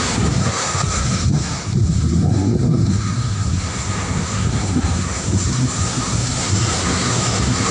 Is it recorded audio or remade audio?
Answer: remade